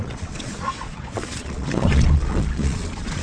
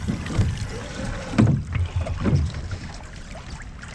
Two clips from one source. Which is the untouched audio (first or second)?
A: second